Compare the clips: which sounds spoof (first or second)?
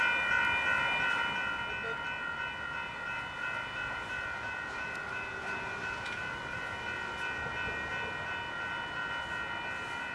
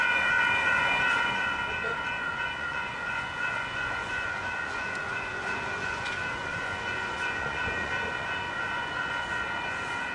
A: second